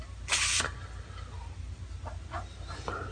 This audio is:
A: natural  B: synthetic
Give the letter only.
A